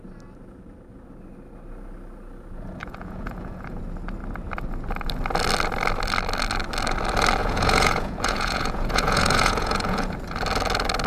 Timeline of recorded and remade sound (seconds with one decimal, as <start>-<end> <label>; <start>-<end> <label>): 0.0-2.8 recorded; 2.8-3.8 remade; 3.8-7.4 recorded; 7.4-10.2 remade; 10.2-11.1 recorded